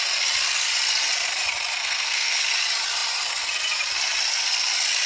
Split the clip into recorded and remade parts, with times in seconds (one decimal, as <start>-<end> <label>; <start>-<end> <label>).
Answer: 0.0-1.8 recorded; 1.8-2.4 remade; 2.4-5.1 recorded